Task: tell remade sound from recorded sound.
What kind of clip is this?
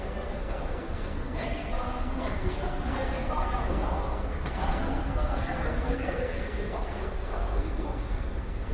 remade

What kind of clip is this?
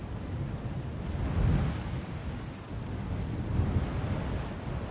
recorded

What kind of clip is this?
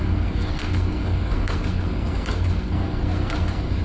remade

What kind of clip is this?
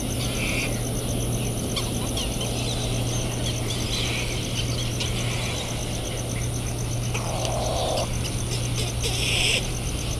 recorded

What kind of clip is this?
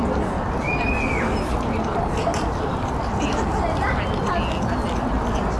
recorded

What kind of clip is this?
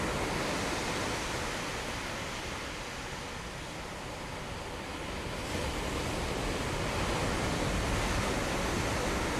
recorded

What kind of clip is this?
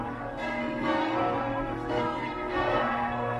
remade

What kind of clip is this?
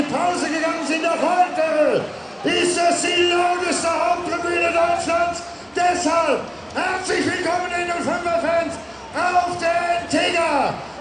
recorded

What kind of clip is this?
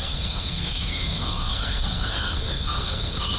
remade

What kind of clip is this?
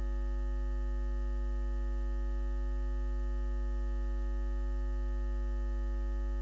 recorded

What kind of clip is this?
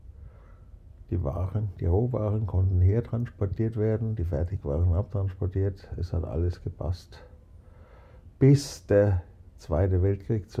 recorded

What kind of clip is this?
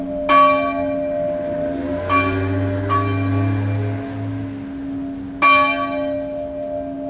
recorded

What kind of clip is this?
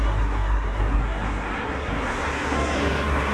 remade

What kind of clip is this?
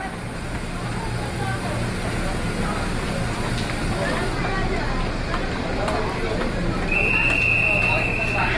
recorded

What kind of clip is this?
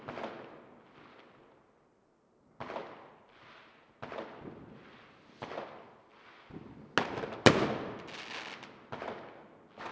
recorded